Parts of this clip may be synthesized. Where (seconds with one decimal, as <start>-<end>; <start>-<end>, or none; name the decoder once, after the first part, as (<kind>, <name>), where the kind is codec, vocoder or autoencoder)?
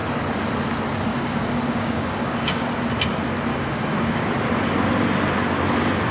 1.1-2.6 (codec, DAC); 3.5-4.3